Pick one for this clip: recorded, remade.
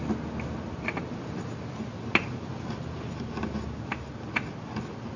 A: recorded